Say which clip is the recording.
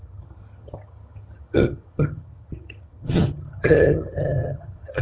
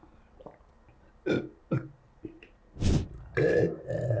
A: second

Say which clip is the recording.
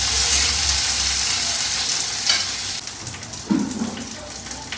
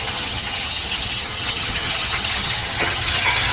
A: first